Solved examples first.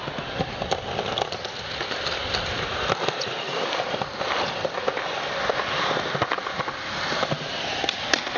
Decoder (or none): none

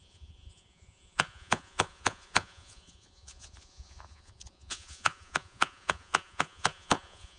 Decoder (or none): vocoder, Vocos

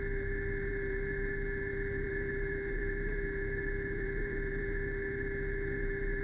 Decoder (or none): vocoder, BigVGAN v2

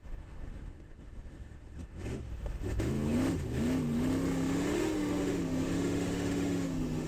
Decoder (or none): autoencoder, DAC-VAE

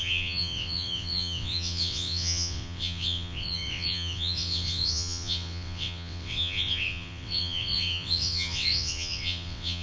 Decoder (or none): vocoder, WaveNeXt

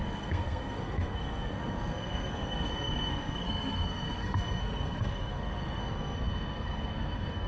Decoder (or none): codec, SNAC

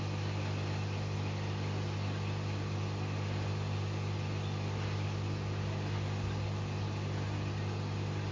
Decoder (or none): none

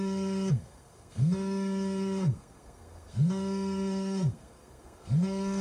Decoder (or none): codec, SNAC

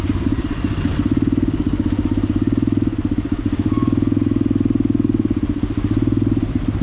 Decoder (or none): none